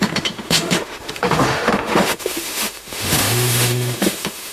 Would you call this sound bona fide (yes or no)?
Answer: no